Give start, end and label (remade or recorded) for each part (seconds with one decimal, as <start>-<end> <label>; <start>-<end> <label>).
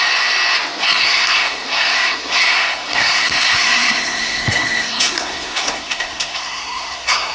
0.0-0.8 recorded; 0.8-7.3 remade